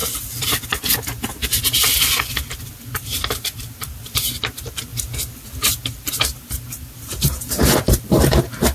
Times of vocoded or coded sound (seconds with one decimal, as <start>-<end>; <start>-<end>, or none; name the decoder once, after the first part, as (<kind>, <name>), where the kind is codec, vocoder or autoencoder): 2.8-4.9 (vocoder, BigVGAN v2); 5.8-8.7